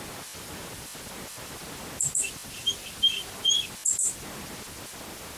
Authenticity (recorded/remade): recorded